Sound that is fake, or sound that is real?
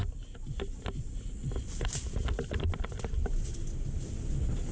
real